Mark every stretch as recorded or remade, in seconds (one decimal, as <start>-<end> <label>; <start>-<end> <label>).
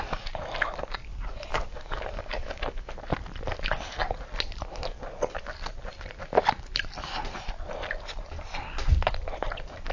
0.0-1.5 recorded; 1.5-2.9 remade; 2.9-9.9 recorded